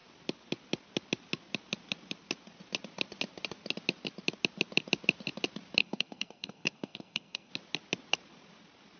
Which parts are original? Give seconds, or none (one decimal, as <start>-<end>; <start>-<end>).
0.0-5.8; 7.5-9.0